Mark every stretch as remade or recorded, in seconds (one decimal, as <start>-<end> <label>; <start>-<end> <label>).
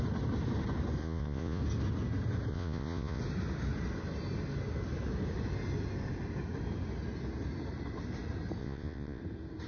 0.0-1.0 recorded; 1.0-1.6 remade; 1.6-2.5 recorded; 2.5-3.2 remade; 3.2-8.6 recorded; 8.6-9.2 remade; 9.2-9.7 recorded